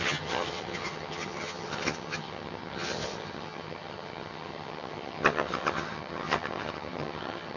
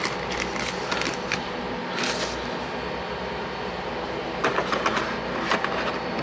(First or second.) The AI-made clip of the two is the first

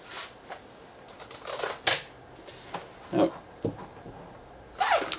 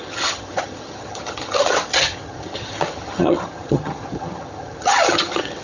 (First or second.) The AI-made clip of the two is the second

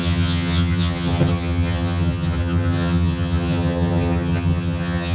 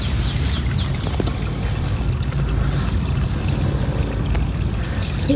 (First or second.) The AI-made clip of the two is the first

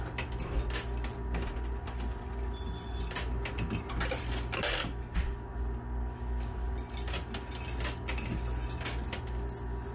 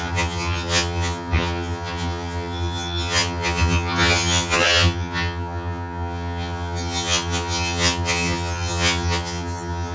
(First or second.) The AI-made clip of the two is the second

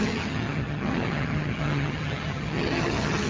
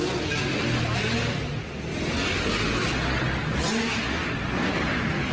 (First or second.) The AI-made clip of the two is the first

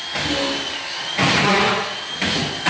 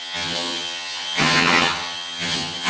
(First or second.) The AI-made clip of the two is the second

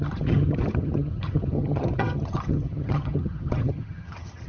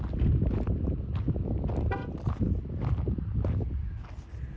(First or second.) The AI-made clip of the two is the first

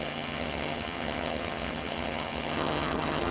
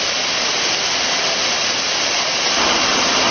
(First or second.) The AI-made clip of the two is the first